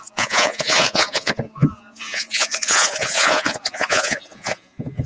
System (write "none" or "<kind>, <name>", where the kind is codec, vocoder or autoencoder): vocoder, Vocos